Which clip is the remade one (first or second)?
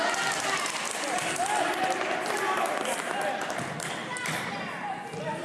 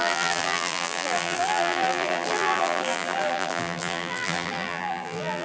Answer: second